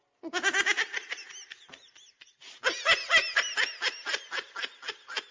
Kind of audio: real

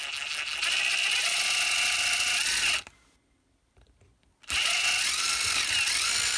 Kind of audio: real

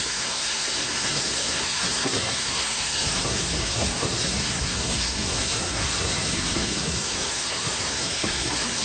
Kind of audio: fake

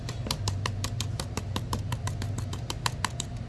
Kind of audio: real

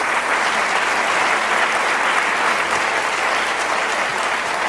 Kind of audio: real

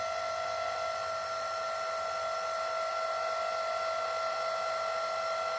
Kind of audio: real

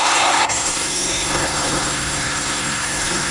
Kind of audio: fake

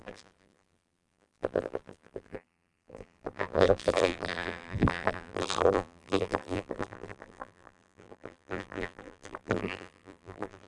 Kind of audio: fake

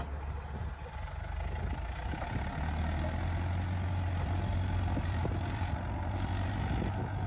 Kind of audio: real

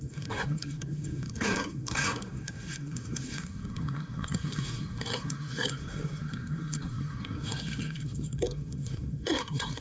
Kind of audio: fake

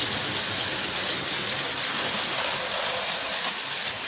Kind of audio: real